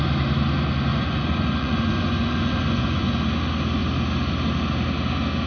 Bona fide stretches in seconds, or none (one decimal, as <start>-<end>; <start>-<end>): 0.0-0.9; 3.1-5.5